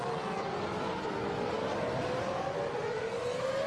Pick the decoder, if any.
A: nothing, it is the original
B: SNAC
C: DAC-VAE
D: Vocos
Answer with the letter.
A